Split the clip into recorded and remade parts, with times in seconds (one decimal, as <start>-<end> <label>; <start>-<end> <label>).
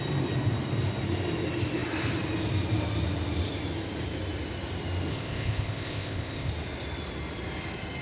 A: 0.0-5.1 recorded; 5.1-6.5 remade; 6.5-8.0 recorded